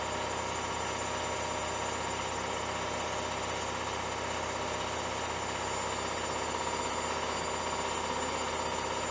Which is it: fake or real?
real